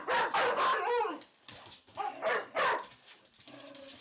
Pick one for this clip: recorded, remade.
recorded